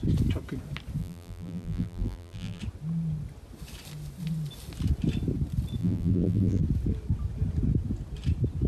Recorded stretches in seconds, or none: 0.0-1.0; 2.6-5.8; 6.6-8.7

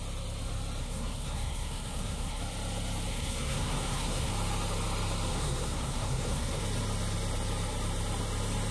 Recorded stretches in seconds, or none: 0.0-0.8; 2.4-3.1; 4.3-5.3; 6.6-8.7